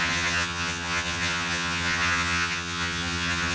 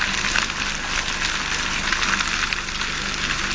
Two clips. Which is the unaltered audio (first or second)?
second